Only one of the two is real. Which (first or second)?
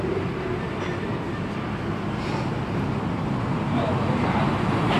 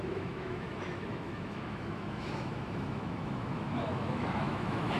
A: first